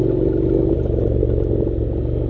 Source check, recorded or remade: recorded